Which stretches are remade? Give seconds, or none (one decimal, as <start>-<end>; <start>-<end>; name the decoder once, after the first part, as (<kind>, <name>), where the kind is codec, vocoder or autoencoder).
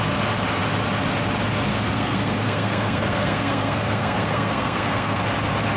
1.7-5.2 (codec, SNAC)